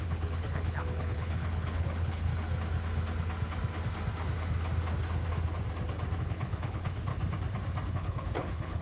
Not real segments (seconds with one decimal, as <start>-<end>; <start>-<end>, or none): 0.0-2.3; 6.2-7.1; 7.9-8.8